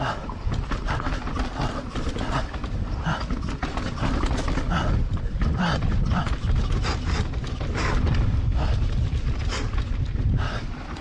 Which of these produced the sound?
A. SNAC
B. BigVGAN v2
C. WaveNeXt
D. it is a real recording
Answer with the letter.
D